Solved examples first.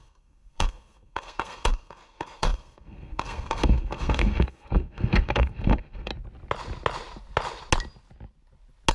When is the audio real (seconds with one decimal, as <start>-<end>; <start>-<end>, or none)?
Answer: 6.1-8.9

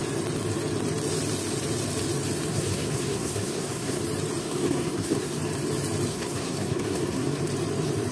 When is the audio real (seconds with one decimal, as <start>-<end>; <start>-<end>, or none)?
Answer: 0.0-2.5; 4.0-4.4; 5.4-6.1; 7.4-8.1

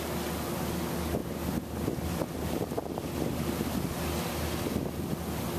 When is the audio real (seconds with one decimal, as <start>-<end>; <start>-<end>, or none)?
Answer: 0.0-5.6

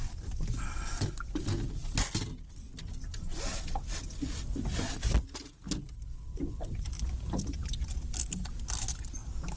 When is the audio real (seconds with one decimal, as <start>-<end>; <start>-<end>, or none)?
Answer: 0.0-9.6

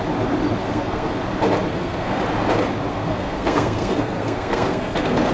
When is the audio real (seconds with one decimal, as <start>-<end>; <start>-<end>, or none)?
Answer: 0.0-0.6; 1.1-1.7; 2.2-2.9